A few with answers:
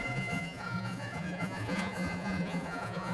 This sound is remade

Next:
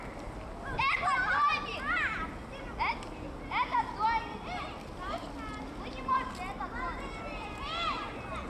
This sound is recorded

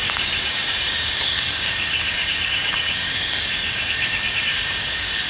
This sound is remade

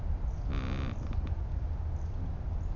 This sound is recorded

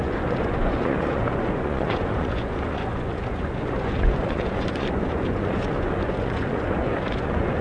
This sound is remade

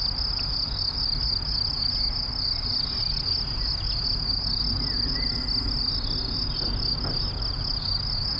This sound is recorded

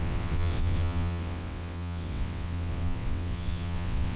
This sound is remade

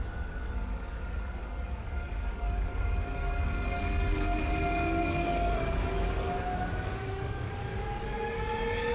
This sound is remade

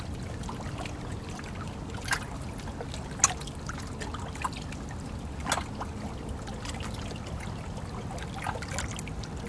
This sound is recorded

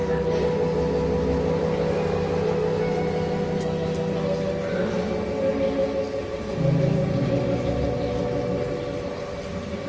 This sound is recorded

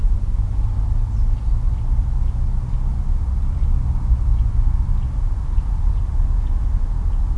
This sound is recorded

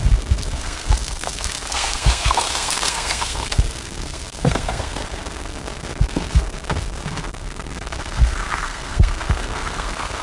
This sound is remade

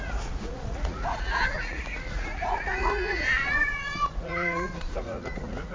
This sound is remade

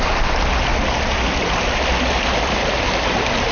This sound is recorded